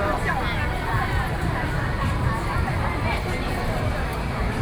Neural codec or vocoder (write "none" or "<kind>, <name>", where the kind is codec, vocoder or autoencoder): none